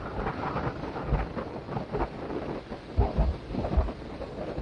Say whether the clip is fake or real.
real